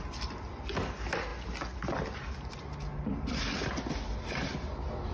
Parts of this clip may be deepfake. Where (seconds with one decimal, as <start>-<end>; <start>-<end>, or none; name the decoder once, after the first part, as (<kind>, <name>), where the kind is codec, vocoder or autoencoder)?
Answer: none